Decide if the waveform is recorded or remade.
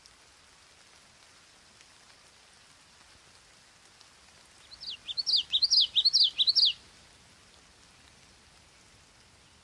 recorded